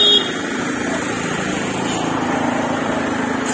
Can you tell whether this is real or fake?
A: real